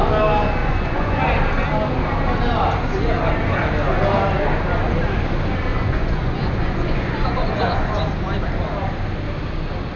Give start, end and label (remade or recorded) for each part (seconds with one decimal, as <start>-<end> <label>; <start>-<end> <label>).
0.0-0.6 recorded; 0.6-1.2 remade; 1.2-5.7 recorded; 5.7-8.0 remade; 8.0-10.0 recorded